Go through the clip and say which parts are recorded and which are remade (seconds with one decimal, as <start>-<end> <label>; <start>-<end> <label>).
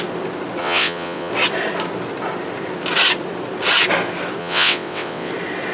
0.0-0.6 recorded; 0.6-1.3 remade; 1.3-4.4 recorded; 4.4-5.3 remade; 5.3-5.7 recorded